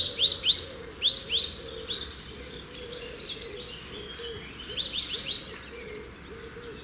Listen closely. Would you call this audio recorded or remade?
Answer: recorded